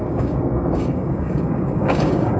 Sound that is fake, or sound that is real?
fake